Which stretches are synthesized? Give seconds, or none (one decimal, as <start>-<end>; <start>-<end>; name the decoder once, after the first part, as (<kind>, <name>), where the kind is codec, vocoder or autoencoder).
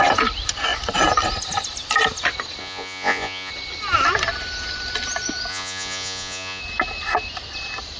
2.6-3.5 (vocoder, Vocos); 5.5-6.6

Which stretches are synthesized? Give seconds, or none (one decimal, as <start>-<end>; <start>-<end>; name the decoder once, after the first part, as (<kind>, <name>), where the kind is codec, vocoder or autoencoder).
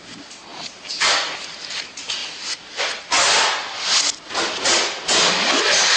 0.5-1.8 (vocoder, BigVGAN v2); 2.2-3.0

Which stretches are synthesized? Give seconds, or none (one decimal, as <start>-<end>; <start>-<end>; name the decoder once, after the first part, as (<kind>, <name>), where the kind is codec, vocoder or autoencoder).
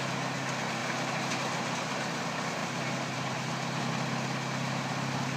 0.8-1.3 (vocoder, BigVGAN v2); 2.6-3.8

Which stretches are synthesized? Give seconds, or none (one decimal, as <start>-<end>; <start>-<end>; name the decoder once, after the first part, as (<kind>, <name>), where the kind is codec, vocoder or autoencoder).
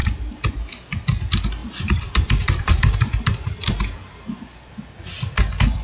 0.0-0.5 (vocoder, BigVGAN v2); 1.6-4.7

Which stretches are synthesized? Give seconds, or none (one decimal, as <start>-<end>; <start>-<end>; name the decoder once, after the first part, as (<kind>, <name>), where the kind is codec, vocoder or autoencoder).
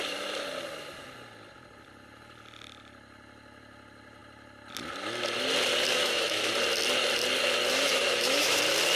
5.9-6.5 (autoencoder, DAC-VAE); 7.7-8.6